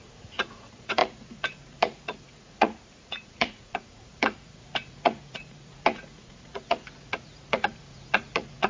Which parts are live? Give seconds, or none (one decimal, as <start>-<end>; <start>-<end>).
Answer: none